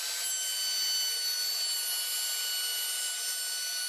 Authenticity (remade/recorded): recorded